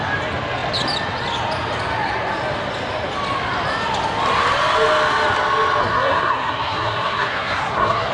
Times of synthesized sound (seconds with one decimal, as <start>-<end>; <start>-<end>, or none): 5.8-8.1